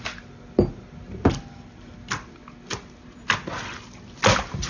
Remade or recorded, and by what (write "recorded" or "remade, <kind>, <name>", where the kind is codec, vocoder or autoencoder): recorded